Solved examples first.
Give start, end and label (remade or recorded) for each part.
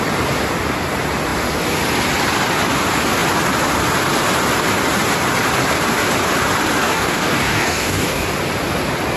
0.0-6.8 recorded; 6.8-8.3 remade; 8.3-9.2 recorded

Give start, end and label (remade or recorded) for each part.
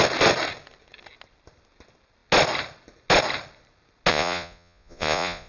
0.0-4.1 recorded; 4.1-5.5 remade